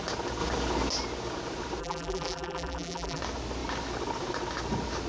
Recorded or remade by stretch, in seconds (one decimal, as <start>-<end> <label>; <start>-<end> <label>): 0.0-1.8 recorded; 1.8-3.2 remade; 3.2-5.1 recorded